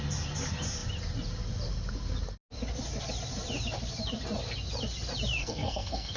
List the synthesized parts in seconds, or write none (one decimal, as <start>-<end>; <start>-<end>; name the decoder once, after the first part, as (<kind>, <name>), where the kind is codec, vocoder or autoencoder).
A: 5.4-6.2 (codec, SNAC)